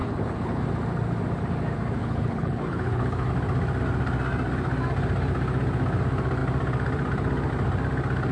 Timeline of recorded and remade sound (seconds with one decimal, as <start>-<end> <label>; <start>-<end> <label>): 0.0-0.6 remade; 0.6-2.0 recorded; 2.0-3.3 remade; 3.3-8.3 recorded

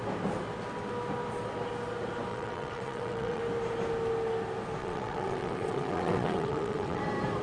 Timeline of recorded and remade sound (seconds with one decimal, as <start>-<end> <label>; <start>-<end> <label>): 0.0-2.3 recorded; 2.3-3.4 remade; 3.4-4.8 recorded; 4.8-7.0 remade; 7.0-7.4 recorded